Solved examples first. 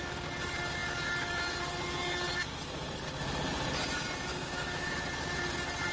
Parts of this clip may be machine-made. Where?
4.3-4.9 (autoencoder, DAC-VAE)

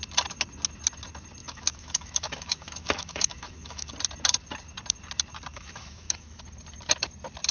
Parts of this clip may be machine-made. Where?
1.4-3.9 (autoencoder, DAC-VAE); 5.5-6.4

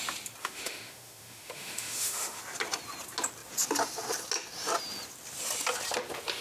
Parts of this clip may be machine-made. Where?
0.4-2.4 (autoencoder, DAC-VAE)

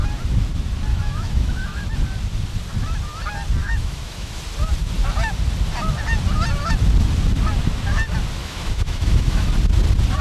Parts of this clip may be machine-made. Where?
0.9-1.8 (autoencoder, DAC-VAE); 3.6-4.4; 8.4-9.5

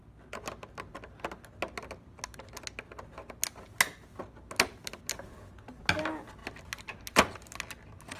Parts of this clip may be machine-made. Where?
none

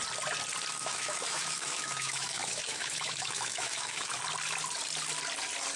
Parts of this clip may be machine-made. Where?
0.7-4.2 (autoencoder, DAC-VAE)